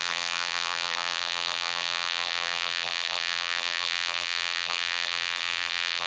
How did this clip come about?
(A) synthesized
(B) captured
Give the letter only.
A